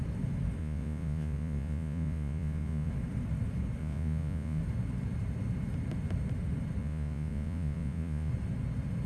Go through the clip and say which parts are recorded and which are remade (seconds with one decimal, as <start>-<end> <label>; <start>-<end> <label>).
0.0-0.6 recorded; 0.6-2.9 remade; 2.9-3.8 recorded; 3.8-4.6 remade; 4.6-6.8 recorded; 6.8-8.3 remade; 8.3-9.1 recorded